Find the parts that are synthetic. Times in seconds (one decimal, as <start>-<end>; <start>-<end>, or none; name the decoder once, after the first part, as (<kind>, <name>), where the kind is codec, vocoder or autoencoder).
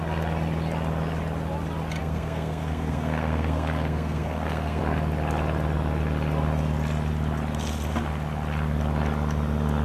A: 2.0-4.8 (codec, SNAC)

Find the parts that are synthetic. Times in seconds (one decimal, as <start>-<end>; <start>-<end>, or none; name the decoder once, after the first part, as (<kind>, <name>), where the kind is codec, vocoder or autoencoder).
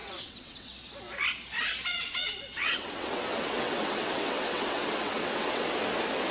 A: 0.0-0.7 (vocoder, WaveNeXt); 1.9-5.7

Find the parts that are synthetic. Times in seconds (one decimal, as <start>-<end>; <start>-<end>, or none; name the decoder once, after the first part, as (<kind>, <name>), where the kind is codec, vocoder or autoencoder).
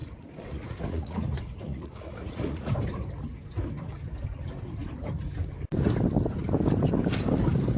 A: 0.0-2.7 (vocoder, Vocos)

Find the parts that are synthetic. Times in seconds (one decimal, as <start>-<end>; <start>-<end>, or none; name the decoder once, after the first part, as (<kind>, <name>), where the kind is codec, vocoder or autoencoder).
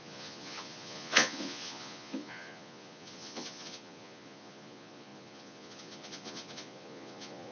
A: 0.0-7.5 (vocoder, Vocos)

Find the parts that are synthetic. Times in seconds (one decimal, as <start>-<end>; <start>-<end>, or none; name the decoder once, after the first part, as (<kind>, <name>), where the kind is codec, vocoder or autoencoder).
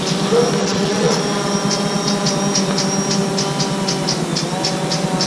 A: 0.6-1.2 (vocoder, Vocos)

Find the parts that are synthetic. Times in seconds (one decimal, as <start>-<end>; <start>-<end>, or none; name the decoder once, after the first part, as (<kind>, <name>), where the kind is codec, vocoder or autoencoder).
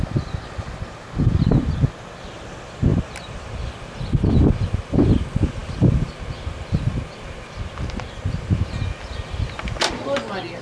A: none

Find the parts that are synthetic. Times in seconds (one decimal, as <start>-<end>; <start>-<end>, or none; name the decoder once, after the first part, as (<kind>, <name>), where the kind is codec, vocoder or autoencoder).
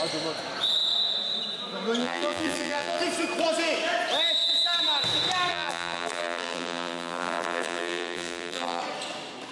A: 2.0-3.0 (vocoder, BigVGAN v2); 5.5-8.8